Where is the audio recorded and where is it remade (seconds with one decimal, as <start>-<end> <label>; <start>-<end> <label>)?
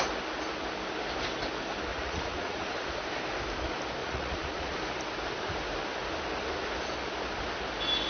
0.0-1.9 recorded; 1.9-2.7 remade; 2.7-4.0 recorded; 4.0-4.8 remade; 4.8-8.1 recorded